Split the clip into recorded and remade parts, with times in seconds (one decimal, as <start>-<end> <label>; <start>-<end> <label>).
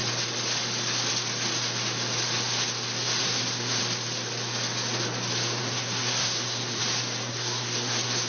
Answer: 0.0-3.2 recorded; 3.2-3.8 remade; 3.8-5.6 recorded; 5.6-6.8 remade; 6.8-7.3 recorded; 7.3-8.3 remade